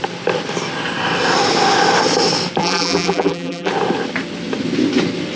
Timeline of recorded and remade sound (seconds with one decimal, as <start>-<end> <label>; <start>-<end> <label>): 0.0-2.6 recorded; 2.6-3.7 remade; 3.7-5.4 recorded